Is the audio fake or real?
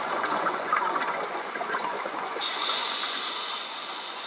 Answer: fake